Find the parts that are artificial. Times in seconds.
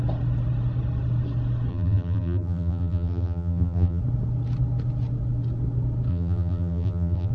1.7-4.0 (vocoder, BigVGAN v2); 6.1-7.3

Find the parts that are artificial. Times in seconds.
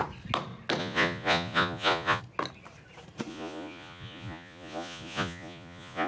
0.8-2.2 (vocoder, Vocos); 3.3-6.1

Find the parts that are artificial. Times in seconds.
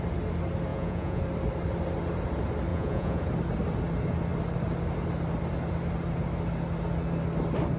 0.7-1.2 (vocoder, Vocos); 2.7-3.2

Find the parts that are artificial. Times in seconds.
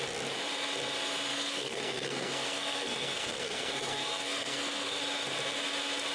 1.3-5.0 (codec, SNAC)